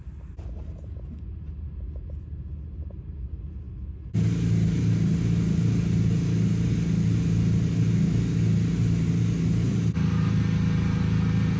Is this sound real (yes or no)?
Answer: yes